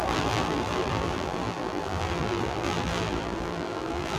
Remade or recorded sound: remade